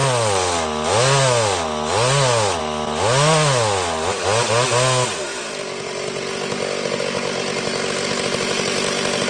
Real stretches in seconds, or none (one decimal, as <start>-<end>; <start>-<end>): 0.0-9.3

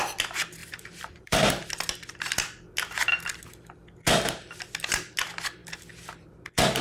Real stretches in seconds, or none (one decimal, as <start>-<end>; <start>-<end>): 0.0-0.6; 1.5-6.8

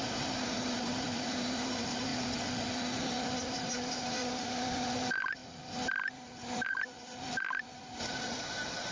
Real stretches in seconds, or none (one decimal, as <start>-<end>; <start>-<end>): 2.1-3.4; 5.4-6.0

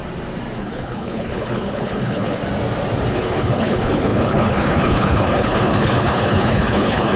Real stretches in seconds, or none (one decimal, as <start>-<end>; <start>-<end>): 0.0-0.6; 2.4-3.1

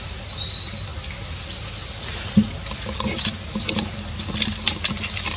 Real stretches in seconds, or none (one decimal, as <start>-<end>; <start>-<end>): 0.0-5.4

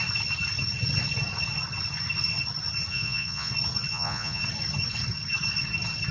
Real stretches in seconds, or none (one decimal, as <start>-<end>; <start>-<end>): 0.0-2.9; 3.5-3.9; 4.4-6.1

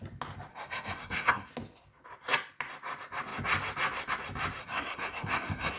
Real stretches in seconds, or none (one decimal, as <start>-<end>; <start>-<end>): 0.0-0.5; 1.5-4.6

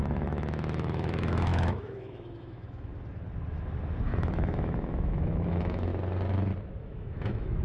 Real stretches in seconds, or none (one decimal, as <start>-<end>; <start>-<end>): 2.9-4.0; 5.9-6.8